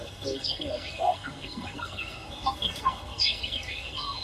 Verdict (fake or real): fake